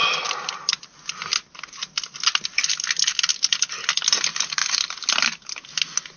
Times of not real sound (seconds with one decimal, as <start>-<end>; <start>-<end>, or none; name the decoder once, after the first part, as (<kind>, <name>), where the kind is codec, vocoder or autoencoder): none